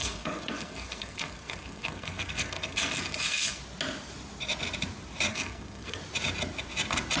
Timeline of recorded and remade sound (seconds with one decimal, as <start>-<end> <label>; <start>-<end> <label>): 0.0-3.6 remade; 3.6-5.3 recorded; 5.3-6.0 remade; 6.0-7.2 recorded